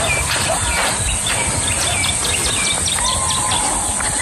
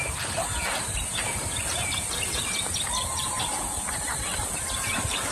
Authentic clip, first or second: first